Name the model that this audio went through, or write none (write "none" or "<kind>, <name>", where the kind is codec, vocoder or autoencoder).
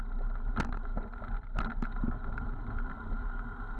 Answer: none